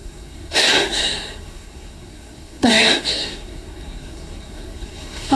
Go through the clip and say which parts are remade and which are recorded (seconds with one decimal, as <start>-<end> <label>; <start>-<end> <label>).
0.0-5.4 remade